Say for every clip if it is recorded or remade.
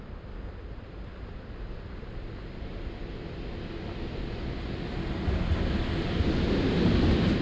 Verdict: recorded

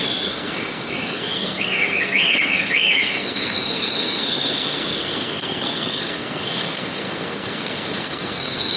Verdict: remade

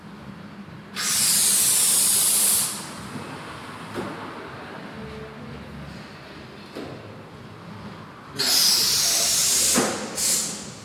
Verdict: recorded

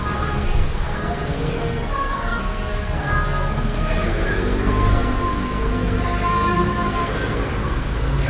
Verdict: remade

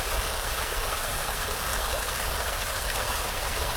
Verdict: remade